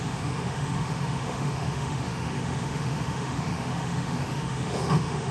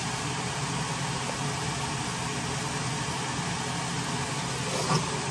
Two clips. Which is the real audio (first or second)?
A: second